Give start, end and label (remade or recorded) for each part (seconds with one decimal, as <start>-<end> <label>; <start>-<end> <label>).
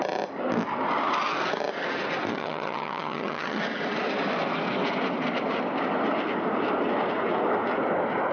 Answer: 0.0-2.3 recorded; 2.3-3.6 remade; 3.6-8.3 recorded